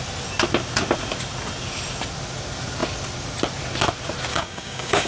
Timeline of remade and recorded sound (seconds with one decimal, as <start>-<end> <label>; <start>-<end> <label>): 0.0-4.3 recorded; 4.3-5.1 remade